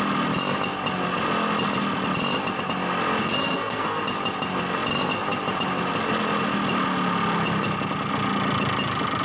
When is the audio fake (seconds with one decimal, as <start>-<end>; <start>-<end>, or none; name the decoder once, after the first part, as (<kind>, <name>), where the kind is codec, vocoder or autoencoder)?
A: 3.2-4.0 (codec, SNAC)